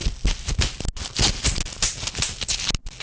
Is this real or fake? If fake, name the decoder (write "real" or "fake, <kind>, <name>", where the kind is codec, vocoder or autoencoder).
real